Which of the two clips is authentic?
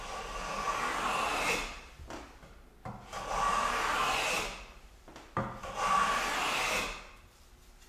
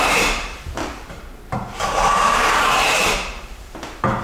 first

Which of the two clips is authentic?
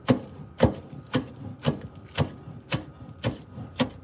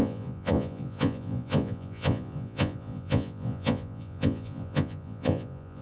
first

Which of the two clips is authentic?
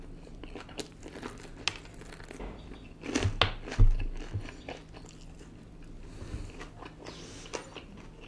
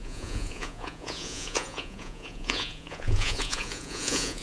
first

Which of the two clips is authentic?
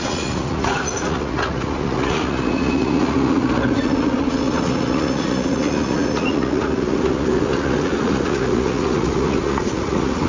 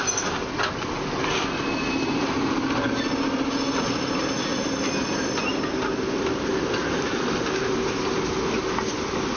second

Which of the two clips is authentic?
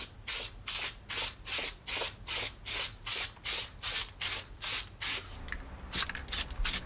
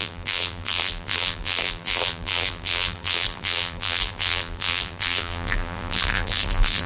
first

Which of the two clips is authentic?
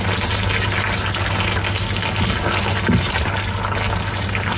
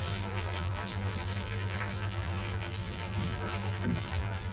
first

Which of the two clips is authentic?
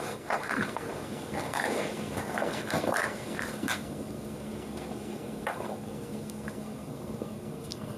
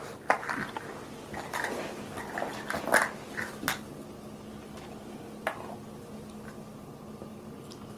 second